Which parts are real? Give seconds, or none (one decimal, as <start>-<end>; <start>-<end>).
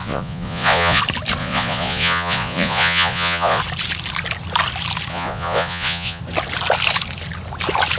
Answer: 1.0-1.4; 3.6-5.1; 6.2-8.0